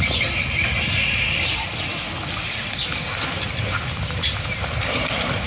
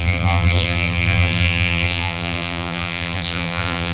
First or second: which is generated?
second